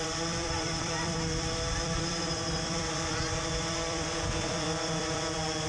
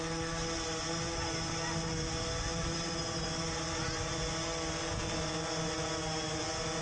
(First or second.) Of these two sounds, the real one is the second